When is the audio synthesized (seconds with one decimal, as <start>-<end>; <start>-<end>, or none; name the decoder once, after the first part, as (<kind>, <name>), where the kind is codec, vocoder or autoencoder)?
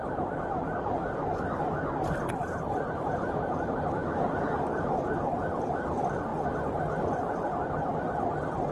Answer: 2.4-3.0 (vocoder, BigVGAN v2)